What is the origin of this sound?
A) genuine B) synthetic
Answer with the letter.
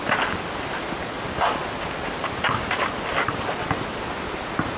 A